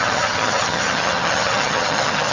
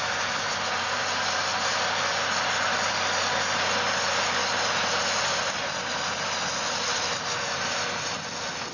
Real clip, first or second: second